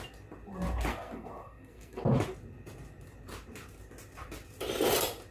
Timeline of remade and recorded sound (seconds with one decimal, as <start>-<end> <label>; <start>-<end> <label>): 0.0-0.9 recorded; 0.9-2.0 remade; 2.0-5.3 recorded